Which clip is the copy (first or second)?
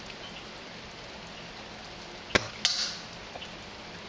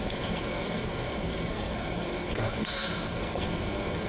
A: second